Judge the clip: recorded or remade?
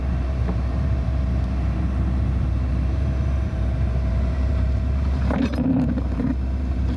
remade